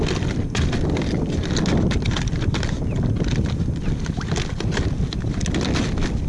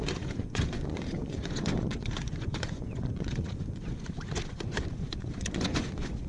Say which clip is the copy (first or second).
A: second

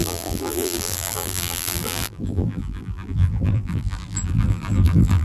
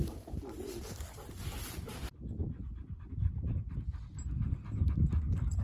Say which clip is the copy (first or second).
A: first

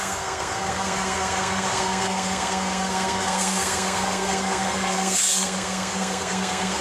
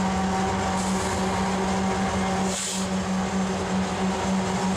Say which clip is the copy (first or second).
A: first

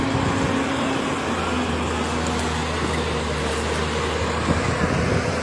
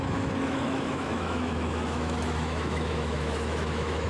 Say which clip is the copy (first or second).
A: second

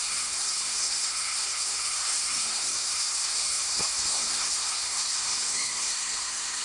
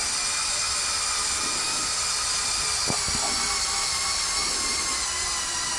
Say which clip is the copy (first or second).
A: first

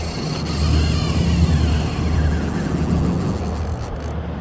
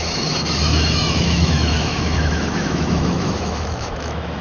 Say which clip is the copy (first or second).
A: second